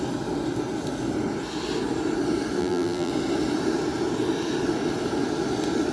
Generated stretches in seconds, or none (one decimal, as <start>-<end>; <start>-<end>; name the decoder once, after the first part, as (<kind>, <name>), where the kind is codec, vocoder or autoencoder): 2.6-3.1 (vocoder, BigVGAN v2)